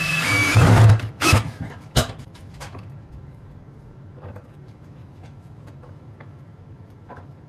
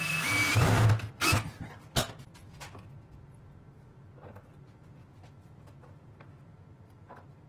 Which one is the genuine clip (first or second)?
second